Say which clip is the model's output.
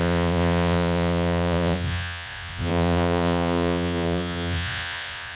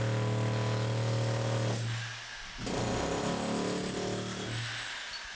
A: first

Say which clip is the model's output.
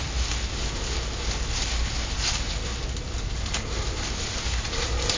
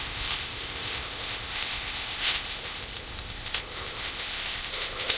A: second